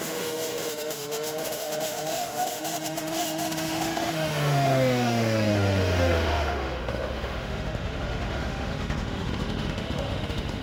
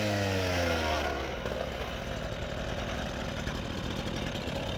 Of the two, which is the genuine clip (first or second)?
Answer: second